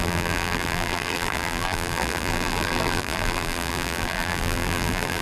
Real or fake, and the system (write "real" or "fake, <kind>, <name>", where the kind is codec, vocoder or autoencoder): fake, vocoder, BigVGAN v2